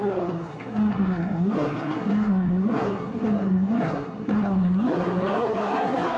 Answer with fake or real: fake